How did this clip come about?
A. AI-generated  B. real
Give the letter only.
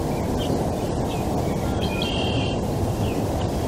B